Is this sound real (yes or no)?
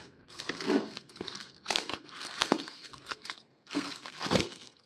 no